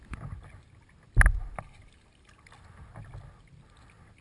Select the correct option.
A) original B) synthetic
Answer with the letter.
A